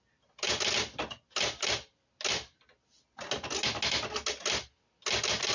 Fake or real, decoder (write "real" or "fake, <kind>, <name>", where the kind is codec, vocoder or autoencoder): real